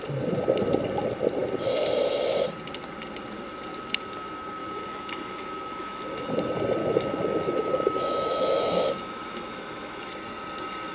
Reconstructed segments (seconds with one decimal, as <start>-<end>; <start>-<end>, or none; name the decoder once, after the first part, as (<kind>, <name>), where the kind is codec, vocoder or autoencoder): 4.6-6.3 (autoencoder, DAC-VAE); 6.8-10.1